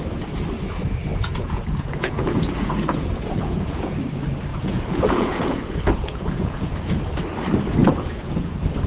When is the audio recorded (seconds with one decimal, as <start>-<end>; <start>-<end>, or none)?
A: 0.0-1.1; 4.0-4.5; 7.0-7.8; 8.5-8.9